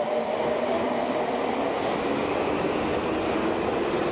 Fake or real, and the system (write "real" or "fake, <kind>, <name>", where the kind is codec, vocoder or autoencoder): real